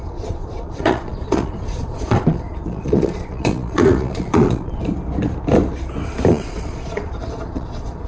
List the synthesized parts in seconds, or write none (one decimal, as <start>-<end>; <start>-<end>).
0.0-4.8; 6.3-8.1